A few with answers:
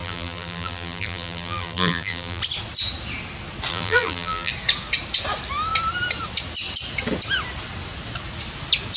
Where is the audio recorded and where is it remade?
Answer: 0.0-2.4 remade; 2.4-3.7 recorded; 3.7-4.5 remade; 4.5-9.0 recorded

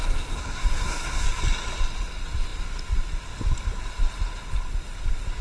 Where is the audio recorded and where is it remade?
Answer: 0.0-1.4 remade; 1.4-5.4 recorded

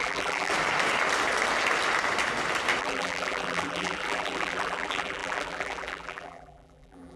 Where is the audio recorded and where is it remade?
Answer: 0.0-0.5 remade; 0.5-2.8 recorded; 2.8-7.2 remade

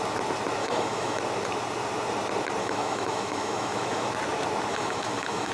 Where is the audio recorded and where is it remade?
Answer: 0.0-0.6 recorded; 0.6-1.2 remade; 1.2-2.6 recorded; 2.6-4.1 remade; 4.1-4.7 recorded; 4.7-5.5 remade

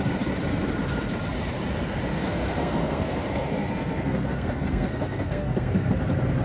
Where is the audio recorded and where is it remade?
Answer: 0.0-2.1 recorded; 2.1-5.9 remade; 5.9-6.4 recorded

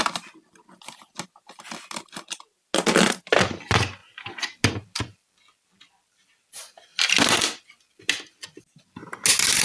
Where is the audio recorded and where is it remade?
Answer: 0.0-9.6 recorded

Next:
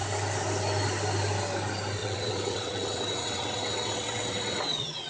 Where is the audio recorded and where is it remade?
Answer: 0.0-2.0 recorded; 2.0-5.1 remade